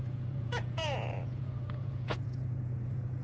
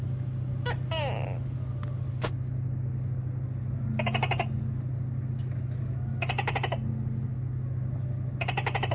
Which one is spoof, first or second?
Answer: first